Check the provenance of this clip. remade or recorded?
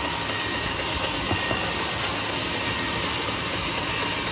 recorded